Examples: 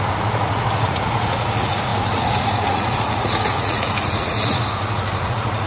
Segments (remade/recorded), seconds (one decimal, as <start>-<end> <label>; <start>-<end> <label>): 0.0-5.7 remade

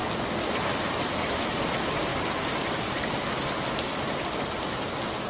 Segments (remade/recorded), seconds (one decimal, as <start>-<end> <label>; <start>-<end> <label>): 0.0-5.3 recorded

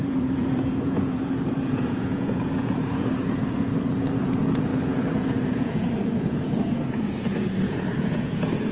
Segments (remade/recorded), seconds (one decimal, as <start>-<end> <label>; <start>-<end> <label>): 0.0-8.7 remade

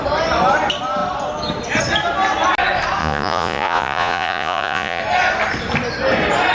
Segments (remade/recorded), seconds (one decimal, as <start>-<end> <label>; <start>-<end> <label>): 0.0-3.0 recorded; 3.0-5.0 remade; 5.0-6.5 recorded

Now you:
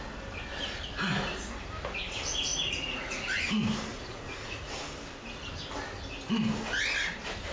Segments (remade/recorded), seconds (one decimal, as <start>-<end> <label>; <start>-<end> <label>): 0.0-2.5 recorded; 2.5-3.4 remade; 3.4-3.9 recorded; 3.9-4.7 remade; 4.7-7.5 recorded

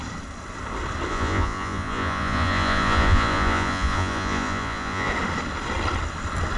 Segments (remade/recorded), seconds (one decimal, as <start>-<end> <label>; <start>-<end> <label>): 0.0-1.1 recorded; 1.1-5.1 remade; 5.1-6.6 recorded